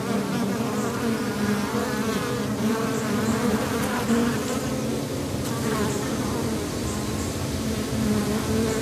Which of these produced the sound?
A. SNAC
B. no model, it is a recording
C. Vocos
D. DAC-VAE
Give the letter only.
B